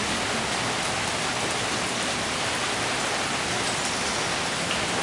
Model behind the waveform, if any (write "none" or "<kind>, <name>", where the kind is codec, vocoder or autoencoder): none